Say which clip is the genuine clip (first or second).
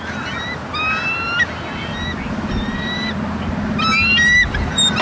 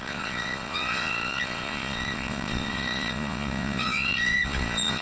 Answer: first